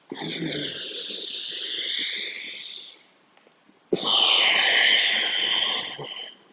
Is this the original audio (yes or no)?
yes